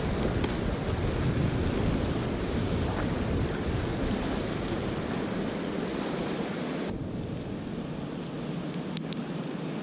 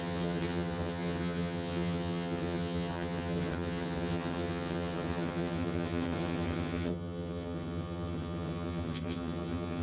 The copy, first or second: second